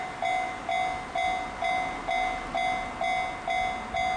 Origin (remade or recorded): recorded